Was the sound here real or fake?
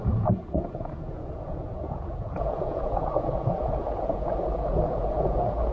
fake